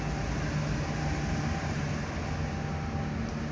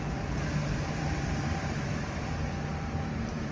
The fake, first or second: second